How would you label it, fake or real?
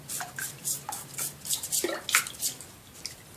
real